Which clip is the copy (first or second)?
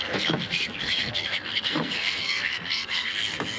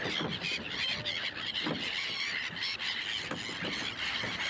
first